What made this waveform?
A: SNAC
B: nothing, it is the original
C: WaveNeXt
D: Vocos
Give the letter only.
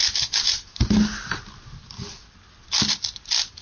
B